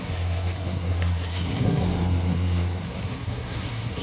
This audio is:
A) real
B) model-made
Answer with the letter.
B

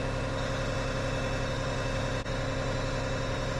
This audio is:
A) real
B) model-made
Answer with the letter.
A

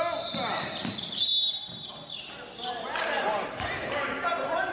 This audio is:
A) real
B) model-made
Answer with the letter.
A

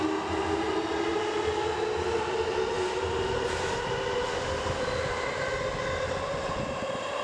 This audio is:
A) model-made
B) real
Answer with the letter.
B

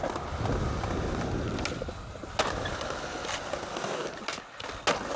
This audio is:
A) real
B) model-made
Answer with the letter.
A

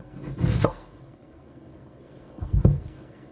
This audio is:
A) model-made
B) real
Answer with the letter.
A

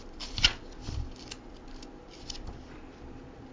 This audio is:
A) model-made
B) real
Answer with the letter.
B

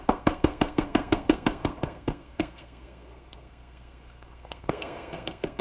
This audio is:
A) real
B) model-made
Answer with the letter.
B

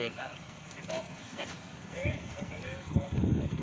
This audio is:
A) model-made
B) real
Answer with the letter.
A